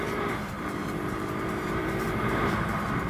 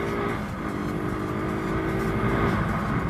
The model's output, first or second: first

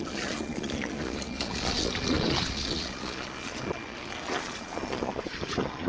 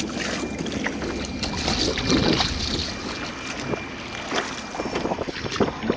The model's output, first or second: first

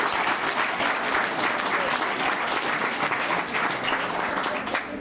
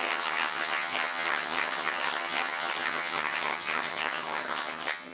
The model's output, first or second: second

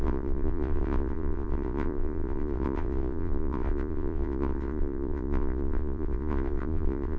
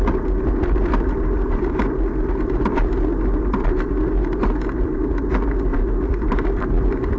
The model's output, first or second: first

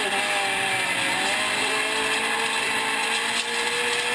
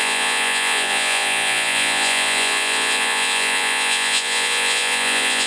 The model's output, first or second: second